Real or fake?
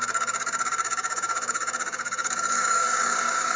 fake